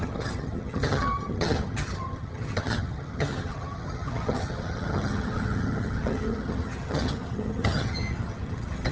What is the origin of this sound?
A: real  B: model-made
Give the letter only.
B